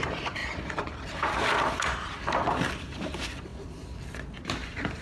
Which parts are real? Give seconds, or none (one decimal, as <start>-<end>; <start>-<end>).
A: 0.0-5.0